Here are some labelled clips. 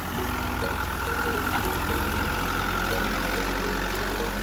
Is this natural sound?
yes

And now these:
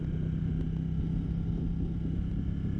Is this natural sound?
yes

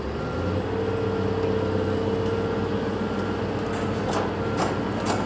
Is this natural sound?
yes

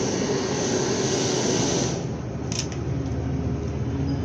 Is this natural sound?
yes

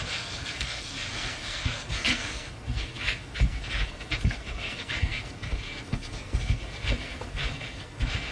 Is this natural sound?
no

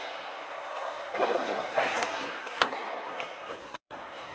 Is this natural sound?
no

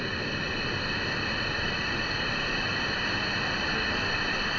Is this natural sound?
yes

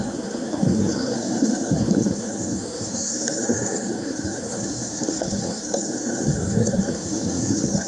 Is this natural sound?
no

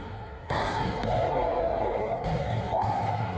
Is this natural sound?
no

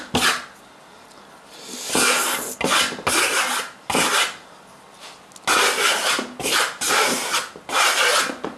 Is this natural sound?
yes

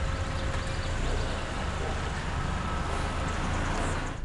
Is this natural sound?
yes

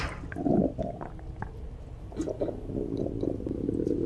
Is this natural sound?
yes